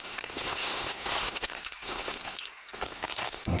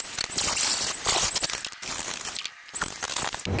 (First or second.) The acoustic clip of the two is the second